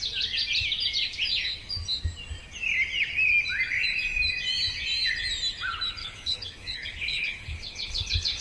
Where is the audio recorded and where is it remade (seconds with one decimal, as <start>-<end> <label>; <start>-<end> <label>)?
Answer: 0.0-6.0 recorded; 6.0-8.4 remade